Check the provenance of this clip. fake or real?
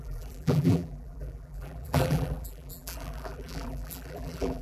fake